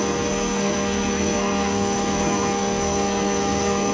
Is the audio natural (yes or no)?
no